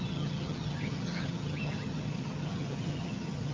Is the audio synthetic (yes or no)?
yes